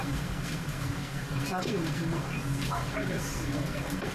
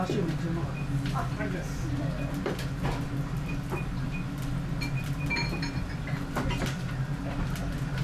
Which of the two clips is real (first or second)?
second